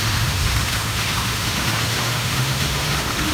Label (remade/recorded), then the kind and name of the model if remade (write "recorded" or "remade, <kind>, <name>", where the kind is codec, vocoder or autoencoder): remade, autoencoder, DAC-VAE